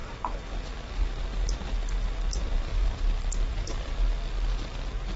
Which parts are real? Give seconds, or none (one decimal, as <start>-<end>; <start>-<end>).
0.0-2.7; 3.9-5.2